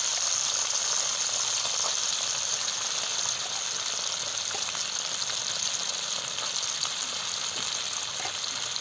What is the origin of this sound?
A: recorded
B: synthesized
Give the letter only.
A